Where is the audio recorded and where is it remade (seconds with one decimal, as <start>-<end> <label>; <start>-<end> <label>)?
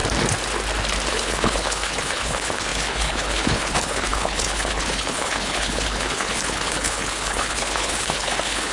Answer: 0.0-1.1 recorded; 1.1-8.7 remade